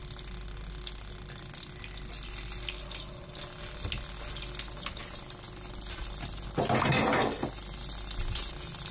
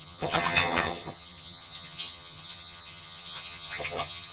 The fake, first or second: second